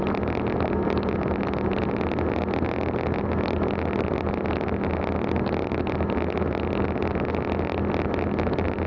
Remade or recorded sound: recorded